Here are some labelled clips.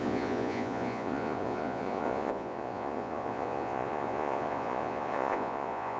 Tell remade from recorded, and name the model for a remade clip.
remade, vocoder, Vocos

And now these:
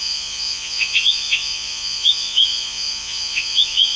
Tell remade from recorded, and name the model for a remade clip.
remade, vocoder, Vocos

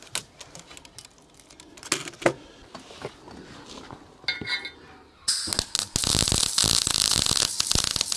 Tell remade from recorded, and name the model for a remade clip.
recorded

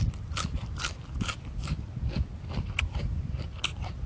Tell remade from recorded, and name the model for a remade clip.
recorded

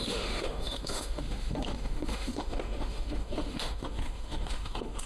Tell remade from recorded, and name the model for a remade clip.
remade, autoencoder, DAC-VAE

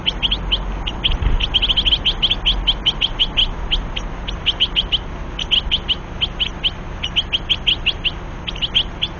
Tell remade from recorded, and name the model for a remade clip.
recorded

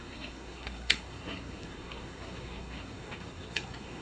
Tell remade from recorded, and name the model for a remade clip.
remade, codec, SNAC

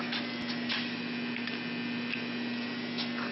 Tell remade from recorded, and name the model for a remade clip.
recorded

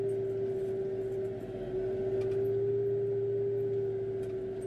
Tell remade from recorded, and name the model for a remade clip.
recorded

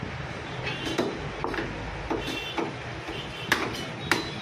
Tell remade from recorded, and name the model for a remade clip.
recorded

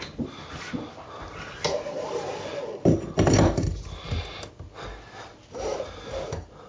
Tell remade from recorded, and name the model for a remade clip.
recorded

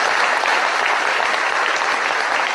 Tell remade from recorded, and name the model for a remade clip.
recorded